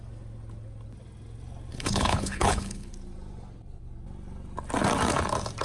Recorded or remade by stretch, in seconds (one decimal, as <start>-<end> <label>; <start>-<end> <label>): 0.0-1.7 recorded; 1.7-2.9 remade; 2.9-5.6 recorded